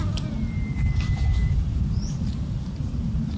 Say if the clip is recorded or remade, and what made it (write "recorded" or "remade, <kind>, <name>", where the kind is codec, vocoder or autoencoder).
recorded